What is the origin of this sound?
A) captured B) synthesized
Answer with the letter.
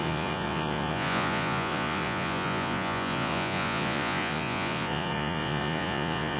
B